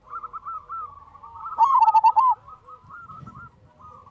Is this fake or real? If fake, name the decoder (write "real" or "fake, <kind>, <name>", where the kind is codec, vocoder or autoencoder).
real